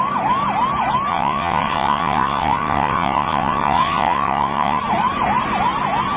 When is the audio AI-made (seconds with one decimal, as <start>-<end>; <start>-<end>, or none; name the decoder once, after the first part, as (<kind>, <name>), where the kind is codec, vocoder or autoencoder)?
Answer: 1.1-4.8 (vocoder, WaveNeXt)